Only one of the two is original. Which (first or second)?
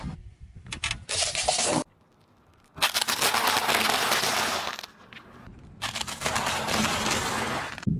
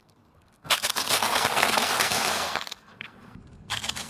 first